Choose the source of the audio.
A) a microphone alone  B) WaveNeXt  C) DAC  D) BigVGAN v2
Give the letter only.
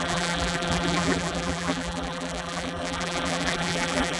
D